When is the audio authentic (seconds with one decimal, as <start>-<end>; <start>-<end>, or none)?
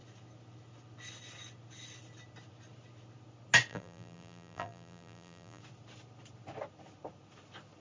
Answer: 0.0-3.7; 5.6-7.8